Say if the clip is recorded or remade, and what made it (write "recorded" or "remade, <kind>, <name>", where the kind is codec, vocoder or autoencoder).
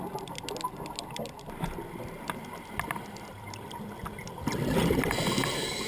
recorded